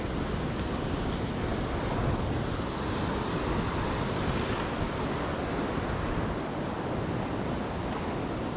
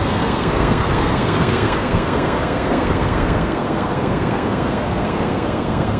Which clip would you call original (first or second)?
first